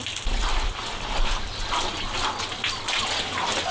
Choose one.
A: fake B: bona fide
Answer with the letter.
B